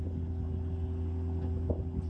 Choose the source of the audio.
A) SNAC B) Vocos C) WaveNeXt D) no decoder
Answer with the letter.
D